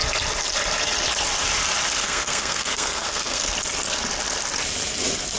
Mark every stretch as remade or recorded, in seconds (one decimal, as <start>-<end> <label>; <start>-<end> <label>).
0.0-2.0 recorded; 2.0-3.4 remade; 3.4-5.4 recorded